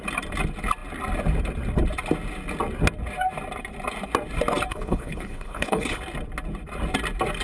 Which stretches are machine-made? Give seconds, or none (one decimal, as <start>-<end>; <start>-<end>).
4.7-6.0